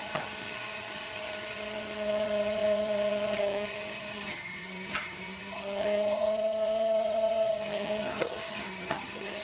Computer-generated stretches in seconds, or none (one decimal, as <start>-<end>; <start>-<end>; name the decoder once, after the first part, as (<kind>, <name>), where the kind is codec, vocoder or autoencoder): 0.0-9.4 (vocoder, HiFi-GAN)